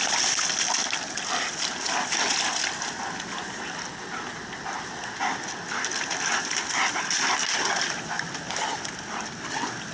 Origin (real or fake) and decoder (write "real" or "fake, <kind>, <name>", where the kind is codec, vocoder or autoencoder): real